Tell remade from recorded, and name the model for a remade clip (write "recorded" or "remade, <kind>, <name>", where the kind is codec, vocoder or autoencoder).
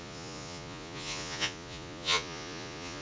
remade, vocoder, Vocos